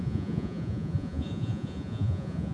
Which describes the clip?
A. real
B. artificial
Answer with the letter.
B